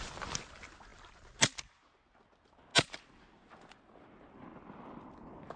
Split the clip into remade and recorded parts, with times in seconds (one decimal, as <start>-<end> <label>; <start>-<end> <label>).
0.0-5.6 recorded